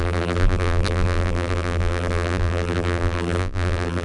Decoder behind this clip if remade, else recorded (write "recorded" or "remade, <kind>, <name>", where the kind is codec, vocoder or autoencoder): remade, vocoder, BigVGAN v2